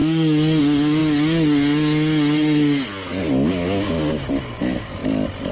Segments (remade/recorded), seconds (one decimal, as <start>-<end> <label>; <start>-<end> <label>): 0.0-5.5 recorded